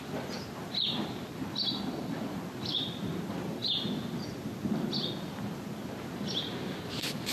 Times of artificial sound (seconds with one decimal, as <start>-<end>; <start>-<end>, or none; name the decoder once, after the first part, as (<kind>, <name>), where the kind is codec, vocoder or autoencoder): none